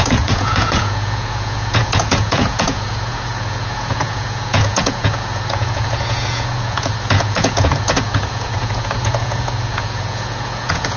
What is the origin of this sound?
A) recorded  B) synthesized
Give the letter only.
B